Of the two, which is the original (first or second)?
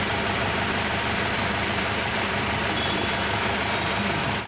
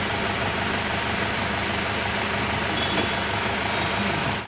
second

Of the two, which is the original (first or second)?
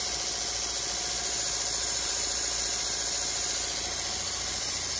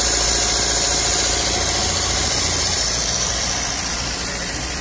first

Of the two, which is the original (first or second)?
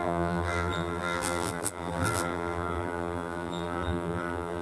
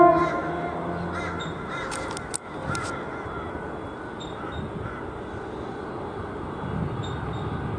second